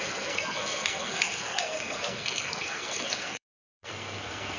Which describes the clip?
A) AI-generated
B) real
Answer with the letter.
A